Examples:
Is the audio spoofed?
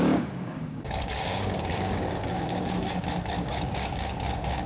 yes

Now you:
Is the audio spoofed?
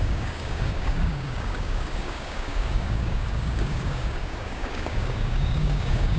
yes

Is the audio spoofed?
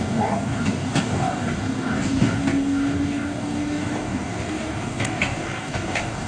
yes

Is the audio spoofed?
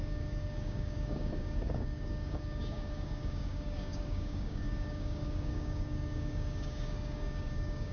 yes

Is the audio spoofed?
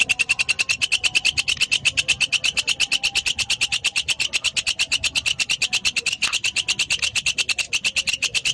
no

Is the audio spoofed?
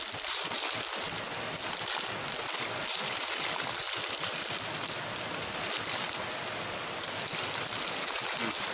no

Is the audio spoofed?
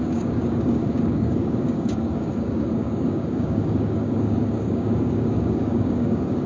yes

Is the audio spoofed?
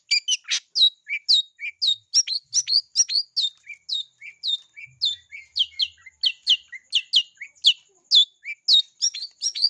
no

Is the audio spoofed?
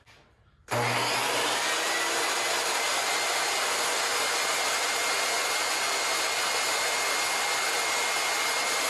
no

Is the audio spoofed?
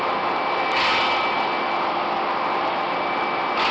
no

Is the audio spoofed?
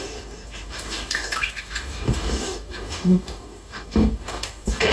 yes